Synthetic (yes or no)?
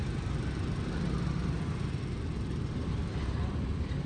no